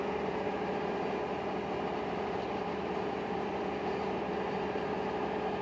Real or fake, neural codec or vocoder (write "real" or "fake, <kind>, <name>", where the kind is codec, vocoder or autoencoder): real